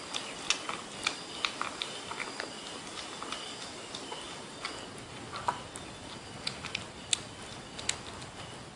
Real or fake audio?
real